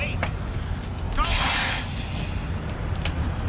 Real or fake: real